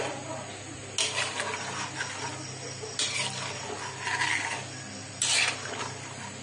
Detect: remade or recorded recorded